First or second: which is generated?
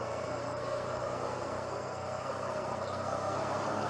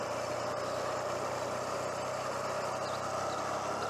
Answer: first